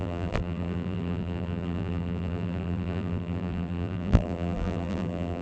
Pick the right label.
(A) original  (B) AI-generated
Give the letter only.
B